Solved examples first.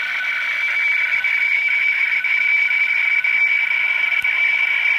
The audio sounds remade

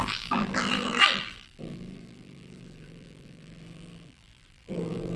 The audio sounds remade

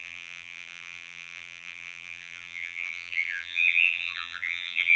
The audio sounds remade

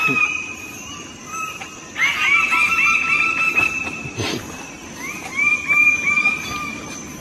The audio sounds remade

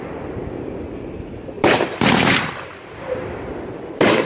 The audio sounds remade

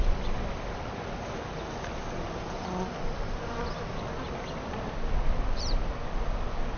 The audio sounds recorded